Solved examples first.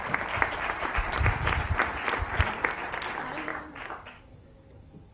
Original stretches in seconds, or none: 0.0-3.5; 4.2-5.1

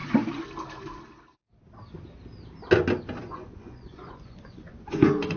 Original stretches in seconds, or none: 0.0-3.2